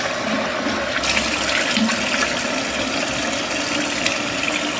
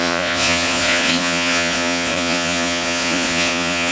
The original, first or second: first